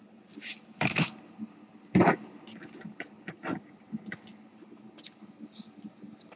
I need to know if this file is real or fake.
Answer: real